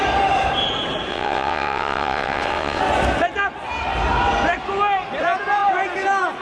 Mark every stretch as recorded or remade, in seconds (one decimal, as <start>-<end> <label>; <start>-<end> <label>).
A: 0.0-1.1 recorded; 1.1-2.8 remade; 2.8-6.4 recorded